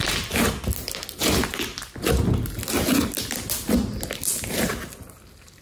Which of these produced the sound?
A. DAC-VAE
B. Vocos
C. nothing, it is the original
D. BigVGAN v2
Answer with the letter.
C